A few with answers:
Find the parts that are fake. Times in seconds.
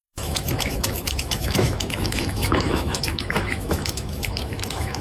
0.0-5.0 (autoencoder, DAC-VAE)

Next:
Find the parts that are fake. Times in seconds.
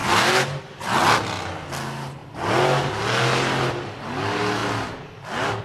none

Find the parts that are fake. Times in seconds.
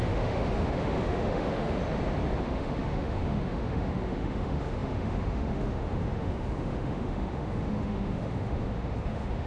0.0-1.8 (autoencoder, DAC-VAE); 2.4-9.5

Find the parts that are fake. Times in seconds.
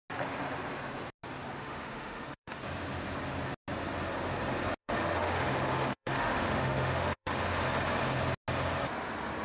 1.6-2.6 (autoencoder, DAC-VAE); 4.8-7.4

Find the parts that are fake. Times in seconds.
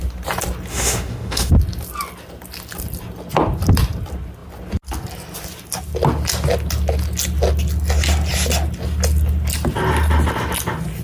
0.7-1.5 (autoencoder, DAC-VAE)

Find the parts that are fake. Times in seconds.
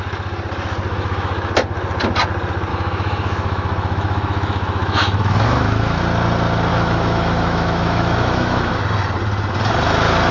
0.9-1.5 (autoencoder, DAC-VAE); 2.7-6.0; 6.7-8.8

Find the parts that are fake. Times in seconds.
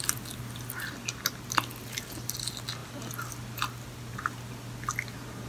none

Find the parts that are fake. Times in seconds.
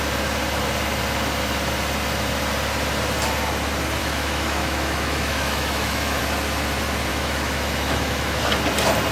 4.0-6.2 (autoencoder, DAC-VAE); 7.1-8.4